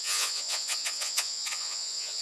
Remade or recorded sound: remade